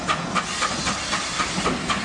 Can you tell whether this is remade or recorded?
recorded